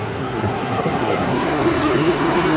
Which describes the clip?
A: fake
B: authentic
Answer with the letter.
A